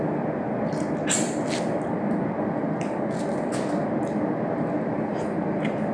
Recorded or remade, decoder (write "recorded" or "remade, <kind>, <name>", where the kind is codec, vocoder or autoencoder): recorded